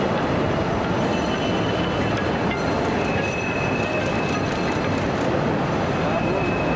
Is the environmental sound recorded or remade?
recorded